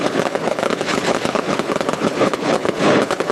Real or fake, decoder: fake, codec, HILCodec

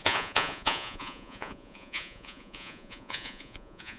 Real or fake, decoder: fake, vocoder, Vocos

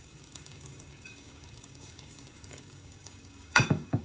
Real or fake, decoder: fake, codec, DAC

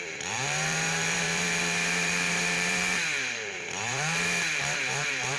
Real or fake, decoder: fake, vocoder, BigVGAN v2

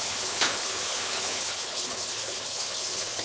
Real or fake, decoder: fake, codec, HILCodec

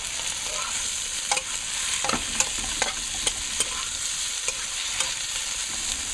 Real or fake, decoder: real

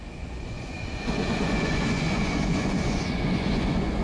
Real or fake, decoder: fake, vocoder, Vocos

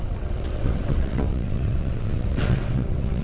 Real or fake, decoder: fake, vocoder, WaveNeXt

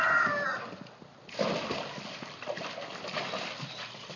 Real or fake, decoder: real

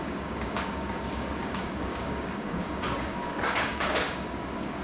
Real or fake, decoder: fake, codec, DAC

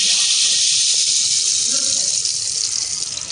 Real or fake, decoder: real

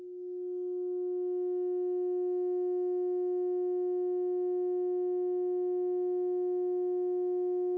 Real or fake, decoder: real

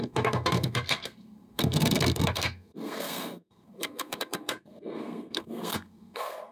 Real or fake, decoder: fake, codec, SNAC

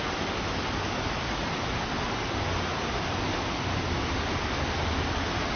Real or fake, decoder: real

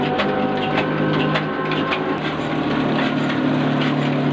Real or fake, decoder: real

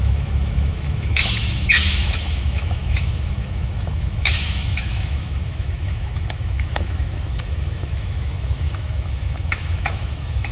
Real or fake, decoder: fake, autoencoder, DAC-VAE